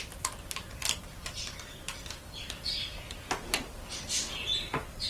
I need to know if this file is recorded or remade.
recorded